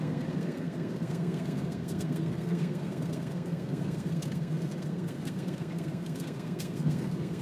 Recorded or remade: remade